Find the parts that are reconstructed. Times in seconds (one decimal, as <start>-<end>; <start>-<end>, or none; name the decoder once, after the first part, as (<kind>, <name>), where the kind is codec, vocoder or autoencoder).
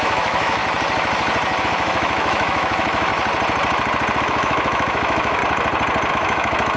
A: 0.0-0.6 (autoencoder, DAC-VAE); 1.6-3.1; 4.2-5.4; 6.1-6.8